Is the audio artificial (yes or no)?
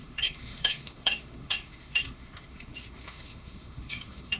yes